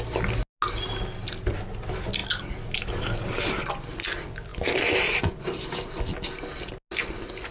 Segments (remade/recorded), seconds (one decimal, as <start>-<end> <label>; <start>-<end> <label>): 0.0-7.5 recorded